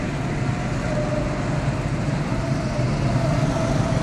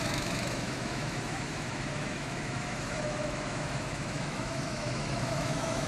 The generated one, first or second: second